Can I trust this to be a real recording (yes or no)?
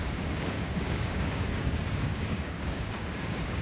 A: no